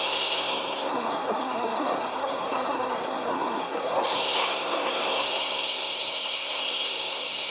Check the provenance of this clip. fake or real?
fake